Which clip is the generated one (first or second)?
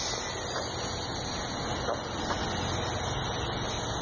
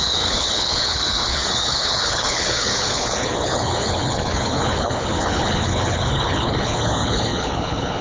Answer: second